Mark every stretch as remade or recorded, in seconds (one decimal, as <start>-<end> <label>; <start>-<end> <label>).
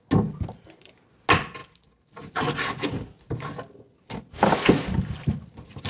0.0-5.9 recorded